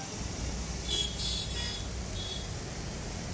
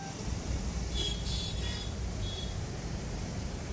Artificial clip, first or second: second